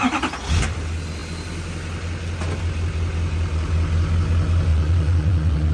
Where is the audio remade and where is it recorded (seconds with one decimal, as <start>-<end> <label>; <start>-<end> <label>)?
0.0-4.7 recorded; 4.7-5.7 remade